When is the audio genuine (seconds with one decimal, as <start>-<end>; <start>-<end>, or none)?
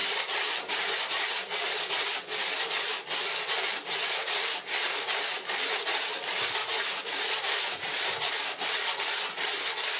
0.0-6.6; 7.4-10.0